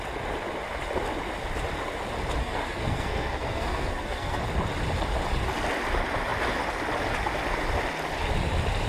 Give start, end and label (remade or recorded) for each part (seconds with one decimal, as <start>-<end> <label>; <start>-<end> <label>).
0.0-2.4 recorded; 2.4-4.4 remade; 4.4-8.9 recorded